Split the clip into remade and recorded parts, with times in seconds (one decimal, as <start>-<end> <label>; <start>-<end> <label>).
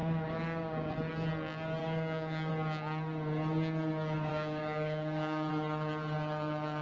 0.0-0.9 remade; 0.9-1.8 recorded; 1.8-2.5 remade; 2.5-4.3 recorded; 4.3-5.5 remade; 5.5-6.8 recorded